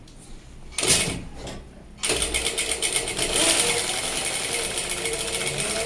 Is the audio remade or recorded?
recorded